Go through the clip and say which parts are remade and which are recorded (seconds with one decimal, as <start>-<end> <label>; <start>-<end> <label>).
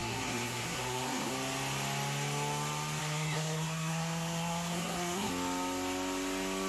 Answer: 0.0-1.3 remade; 1.3-3.0 recorded; 3.0-5.3 remade; 5.3-6.7 recorded